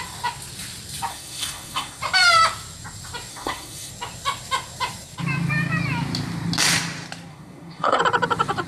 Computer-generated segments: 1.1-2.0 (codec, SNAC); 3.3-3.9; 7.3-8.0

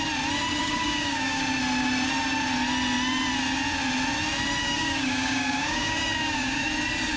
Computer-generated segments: 0.6-1.4 (codec, DAC); 4.6-6.7

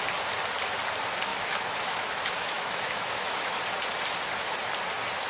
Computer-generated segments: 1.3-3.6 (autoencoder, DAC-VAE)

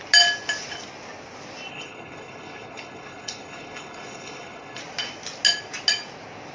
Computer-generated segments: 1.7-4.8 (codec, HILCodec)